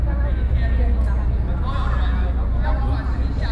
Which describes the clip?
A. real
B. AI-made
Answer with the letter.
A